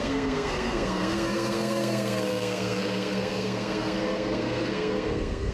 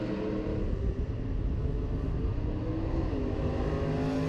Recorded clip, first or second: second